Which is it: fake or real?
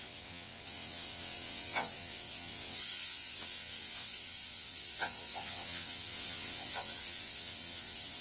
fake